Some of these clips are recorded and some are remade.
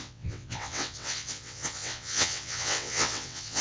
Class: remade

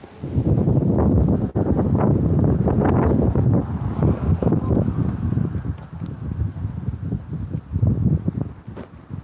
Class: recorded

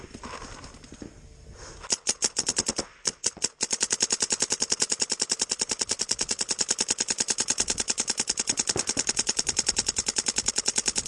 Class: recorded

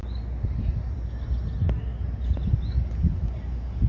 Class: recorded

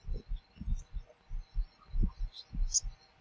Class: recorded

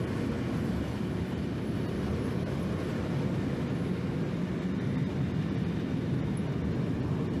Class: recorded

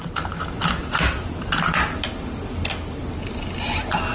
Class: recorded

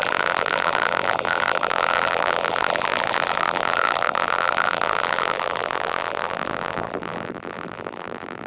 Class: remade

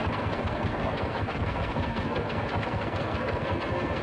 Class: remade